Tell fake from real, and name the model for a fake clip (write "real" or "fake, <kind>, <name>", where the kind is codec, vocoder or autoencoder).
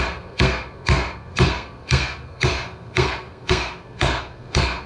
fake, codec, SNAC